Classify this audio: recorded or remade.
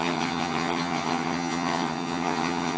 remade